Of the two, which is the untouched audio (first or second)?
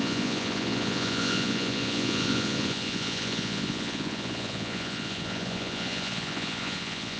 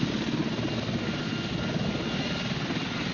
second